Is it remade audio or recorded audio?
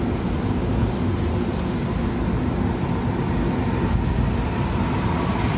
recorded